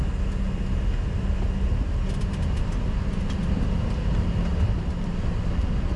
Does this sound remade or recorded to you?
recorded